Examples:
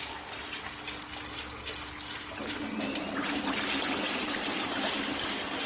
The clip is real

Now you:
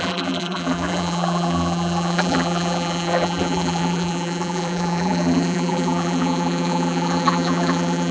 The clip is fake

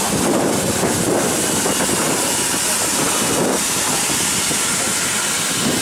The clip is real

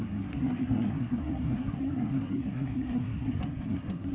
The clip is fake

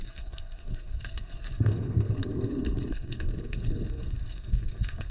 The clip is fake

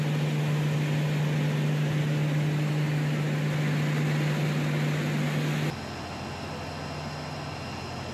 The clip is real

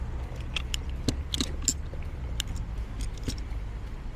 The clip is real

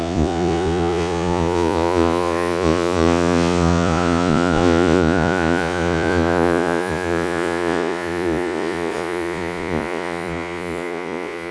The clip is fake